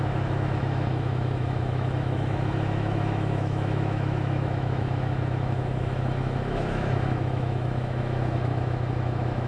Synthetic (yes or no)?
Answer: yes